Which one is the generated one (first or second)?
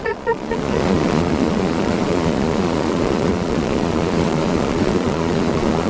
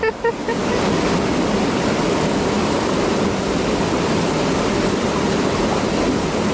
first